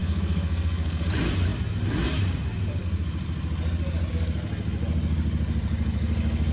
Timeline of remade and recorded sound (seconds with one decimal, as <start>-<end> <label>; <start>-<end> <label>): 0.0-1.0 remade; 1.0-6.5 recorded